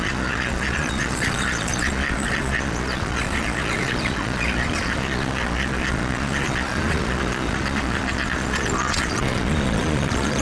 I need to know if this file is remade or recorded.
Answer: remade